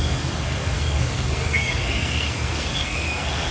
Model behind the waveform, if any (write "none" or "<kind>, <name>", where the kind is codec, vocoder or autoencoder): codec, SNAC